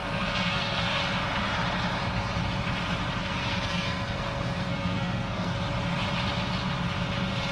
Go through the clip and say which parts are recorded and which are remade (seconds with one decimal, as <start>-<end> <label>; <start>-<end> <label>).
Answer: 0.0-1.0 remade; 1.0-3.2 recorded; 3.2-5.6 remade; 5.6-7.5 recorded